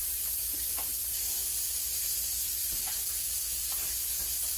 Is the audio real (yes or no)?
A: yes